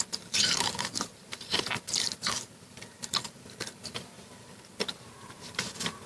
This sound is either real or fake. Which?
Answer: fake